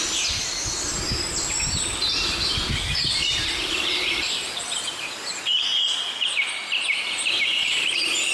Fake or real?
fake